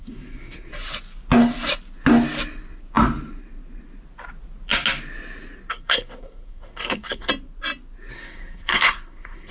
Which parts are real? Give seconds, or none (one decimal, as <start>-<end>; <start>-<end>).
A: 0.7-5.7; 7.3-8.1